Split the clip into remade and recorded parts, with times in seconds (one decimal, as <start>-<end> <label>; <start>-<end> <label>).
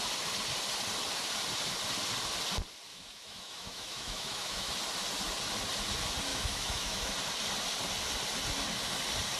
0.0-2.9 recorded; 2.9-4.7 remade; 4.7-6.3 recorded; 6.3-7.1 remade; 7.1-9.4 recorded